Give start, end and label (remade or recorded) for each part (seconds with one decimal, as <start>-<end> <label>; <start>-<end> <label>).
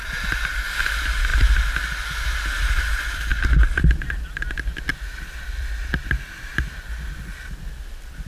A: 0.0-8.3 recorded